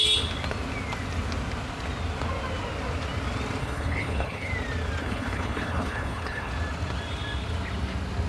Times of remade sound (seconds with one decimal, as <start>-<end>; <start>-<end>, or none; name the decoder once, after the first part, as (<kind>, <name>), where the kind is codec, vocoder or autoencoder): 3.6-4.5 (codec, HILCodec); 5.0-6.5